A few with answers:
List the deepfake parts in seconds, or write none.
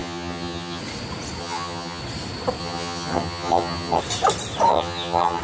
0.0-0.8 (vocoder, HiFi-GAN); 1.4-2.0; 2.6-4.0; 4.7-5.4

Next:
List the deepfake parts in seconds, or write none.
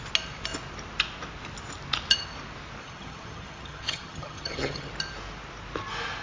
2.8-4.9 (vocoder, HiFi-GAN)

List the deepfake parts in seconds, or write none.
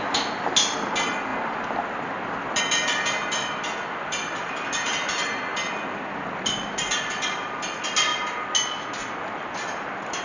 none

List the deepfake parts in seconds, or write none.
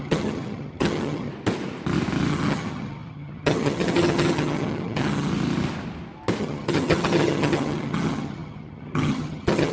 0.0-1.3 (vocoder, HiFi-GAN); 2.3-5.3; 6.4-9.7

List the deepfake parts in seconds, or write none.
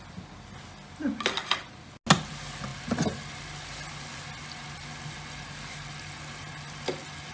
none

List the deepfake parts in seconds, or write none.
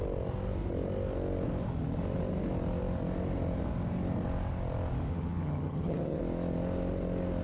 5.1-6.2 (vocoder, HiFi-GAN)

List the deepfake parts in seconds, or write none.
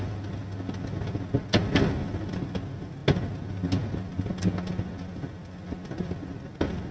none